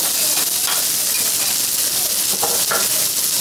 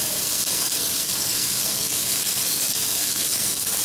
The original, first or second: first